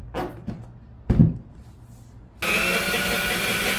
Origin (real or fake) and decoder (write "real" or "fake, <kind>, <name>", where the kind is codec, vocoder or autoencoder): real